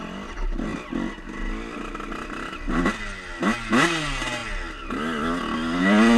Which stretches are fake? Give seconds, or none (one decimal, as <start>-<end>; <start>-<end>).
none